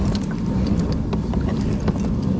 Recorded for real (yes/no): yes